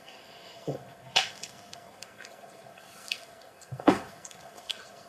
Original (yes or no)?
no